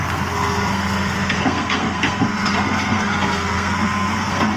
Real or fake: fake